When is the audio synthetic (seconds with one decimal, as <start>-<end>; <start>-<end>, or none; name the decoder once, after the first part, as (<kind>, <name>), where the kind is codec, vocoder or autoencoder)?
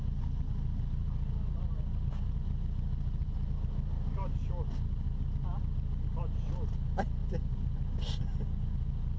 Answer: none